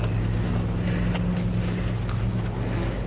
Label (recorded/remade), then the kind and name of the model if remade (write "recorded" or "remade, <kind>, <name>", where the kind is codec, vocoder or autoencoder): recorded